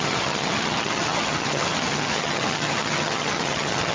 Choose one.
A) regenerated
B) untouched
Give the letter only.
A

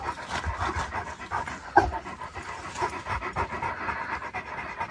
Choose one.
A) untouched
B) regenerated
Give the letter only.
A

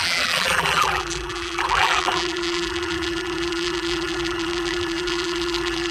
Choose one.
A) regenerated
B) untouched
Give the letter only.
A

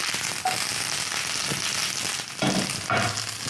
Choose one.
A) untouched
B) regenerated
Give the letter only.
A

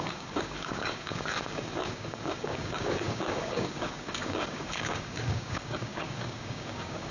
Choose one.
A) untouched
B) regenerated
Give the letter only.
B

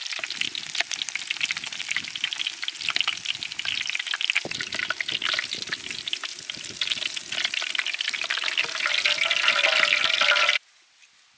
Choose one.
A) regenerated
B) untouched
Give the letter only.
B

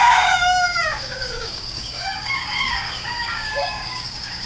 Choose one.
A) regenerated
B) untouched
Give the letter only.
A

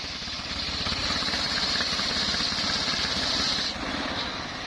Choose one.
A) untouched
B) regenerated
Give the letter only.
A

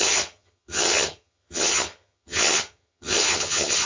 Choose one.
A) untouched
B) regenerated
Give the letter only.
B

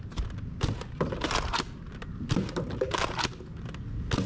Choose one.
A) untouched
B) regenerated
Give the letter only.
A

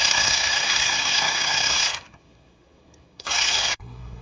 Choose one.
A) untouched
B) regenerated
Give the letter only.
B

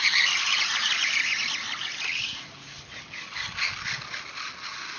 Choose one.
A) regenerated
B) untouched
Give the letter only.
B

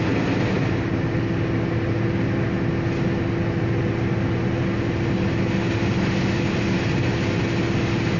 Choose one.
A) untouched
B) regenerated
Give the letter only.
A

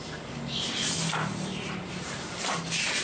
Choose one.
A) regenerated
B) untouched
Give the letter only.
B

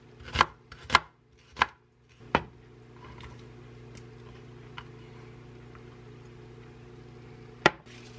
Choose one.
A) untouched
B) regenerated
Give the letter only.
A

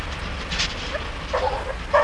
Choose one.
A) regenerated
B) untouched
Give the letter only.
B